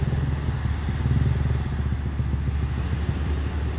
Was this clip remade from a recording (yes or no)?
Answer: no